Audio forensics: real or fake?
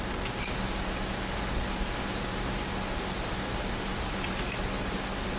real